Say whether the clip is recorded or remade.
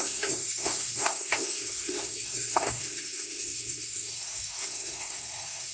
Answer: remade